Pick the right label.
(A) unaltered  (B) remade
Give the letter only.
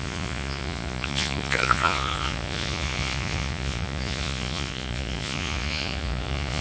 B